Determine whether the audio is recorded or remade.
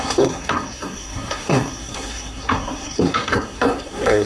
remade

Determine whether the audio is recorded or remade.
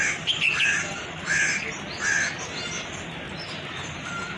recorded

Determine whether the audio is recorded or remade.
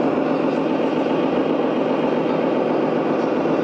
recorded